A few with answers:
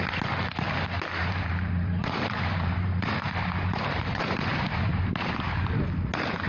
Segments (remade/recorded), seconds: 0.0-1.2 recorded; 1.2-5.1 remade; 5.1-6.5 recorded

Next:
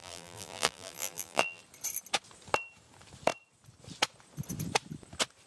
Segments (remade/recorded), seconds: 0.0-1.6 remade; 1.6-5.5 recorded